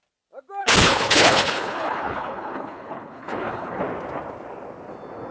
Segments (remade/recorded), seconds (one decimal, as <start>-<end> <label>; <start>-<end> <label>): 0.0-0.6 recorded; 0.6-3.8 remade; 3.8-5.3 recorded